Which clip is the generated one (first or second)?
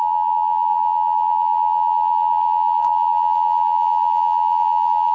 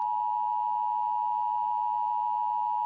first